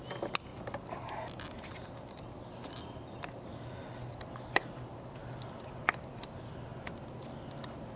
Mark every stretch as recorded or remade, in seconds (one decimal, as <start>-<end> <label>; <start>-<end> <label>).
0.0-8.0 recorded